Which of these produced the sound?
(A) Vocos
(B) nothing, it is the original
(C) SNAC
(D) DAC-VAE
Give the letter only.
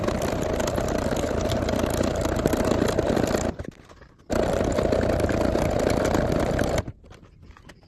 B